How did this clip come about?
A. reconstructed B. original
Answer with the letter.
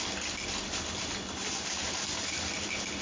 B